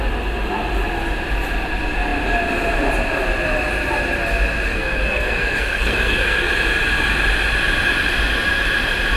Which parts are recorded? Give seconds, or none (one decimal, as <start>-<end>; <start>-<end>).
0.0-4.7; 6.5-9.2